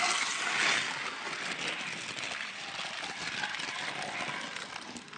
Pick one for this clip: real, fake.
real